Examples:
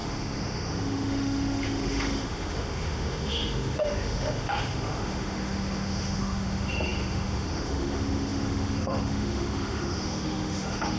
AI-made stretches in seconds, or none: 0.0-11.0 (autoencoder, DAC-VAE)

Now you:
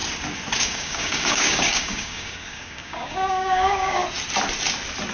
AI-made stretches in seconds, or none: 0.6-4.0 (codec, DAC)

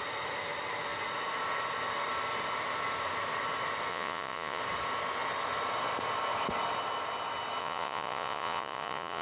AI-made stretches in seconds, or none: 3.9-4.6 (vocoder, Vocos); 7.6-9.2

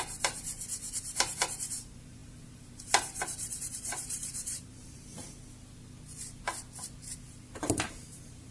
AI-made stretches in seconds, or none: 0.0-5.1 (vocoder, BigVGAN v2); 7.6-8.5

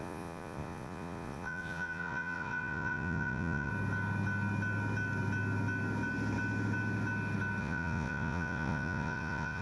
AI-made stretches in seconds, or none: 0.0-3.7 (vocoder, Vocos); 7.6-9.6

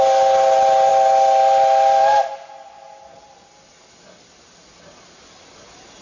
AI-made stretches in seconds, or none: none

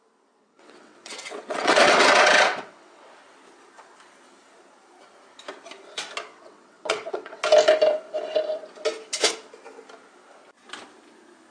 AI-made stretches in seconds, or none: 0.4-3.1 (vocoder, WaveNeXt); 6.3-7.4